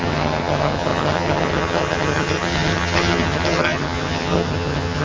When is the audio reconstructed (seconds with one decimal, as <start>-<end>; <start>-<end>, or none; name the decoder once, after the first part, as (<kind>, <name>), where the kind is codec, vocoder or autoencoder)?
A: 0.0-5.0 (vocoder, HiFi-GAN)